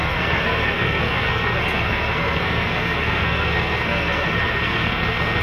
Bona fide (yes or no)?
no